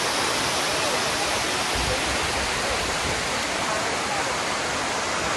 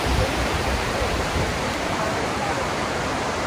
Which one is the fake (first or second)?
second